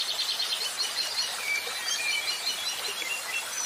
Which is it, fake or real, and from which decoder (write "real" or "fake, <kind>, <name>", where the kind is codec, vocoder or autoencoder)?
real